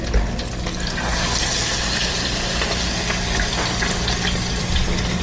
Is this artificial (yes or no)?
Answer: no